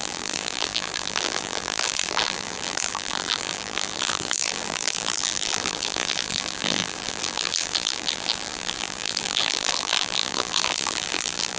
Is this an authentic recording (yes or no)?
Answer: no